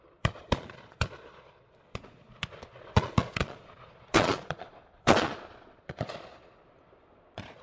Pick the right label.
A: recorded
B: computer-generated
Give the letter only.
B